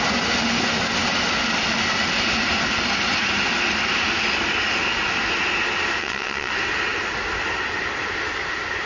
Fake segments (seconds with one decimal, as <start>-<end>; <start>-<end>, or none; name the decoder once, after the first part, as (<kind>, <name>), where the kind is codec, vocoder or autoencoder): 6.0-6.5 (vocoder, WaveNeXt)